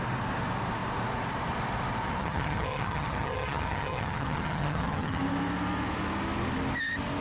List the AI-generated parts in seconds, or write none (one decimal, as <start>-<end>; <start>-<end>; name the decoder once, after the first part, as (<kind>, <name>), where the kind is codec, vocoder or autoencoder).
2.2-5.2 (vocoder, HiFi-GAN)